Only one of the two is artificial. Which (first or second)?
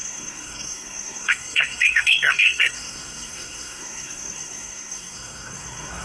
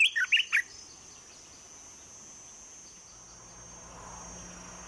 first